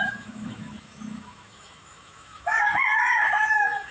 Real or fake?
fake